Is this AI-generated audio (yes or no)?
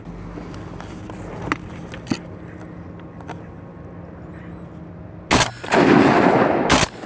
no